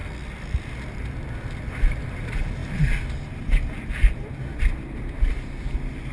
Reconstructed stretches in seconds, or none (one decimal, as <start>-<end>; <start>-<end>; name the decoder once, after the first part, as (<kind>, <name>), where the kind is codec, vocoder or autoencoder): none